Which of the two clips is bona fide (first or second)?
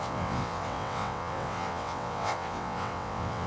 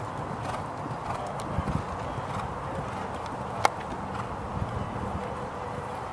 second